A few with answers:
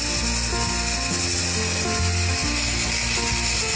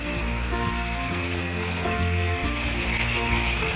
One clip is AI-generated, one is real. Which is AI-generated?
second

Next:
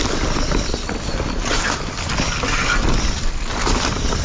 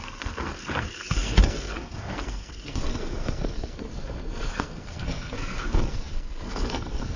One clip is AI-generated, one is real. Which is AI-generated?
second